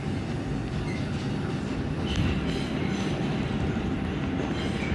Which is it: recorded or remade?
recorded